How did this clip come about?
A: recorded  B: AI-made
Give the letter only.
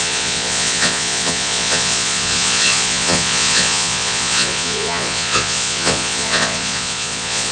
B